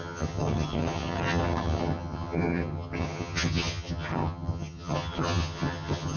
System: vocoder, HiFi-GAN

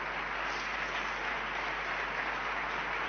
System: none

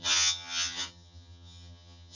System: vocoder, HiFi-GAN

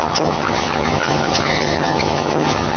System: vocoder, HiFi-GAN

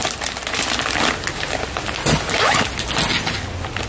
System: none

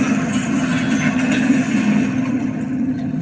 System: vocoder, HiFi-GAN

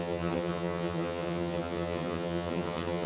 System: vocoder, HiFi-GAN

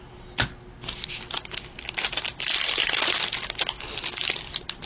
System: none